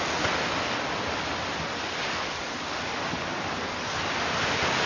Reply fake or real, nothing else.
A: real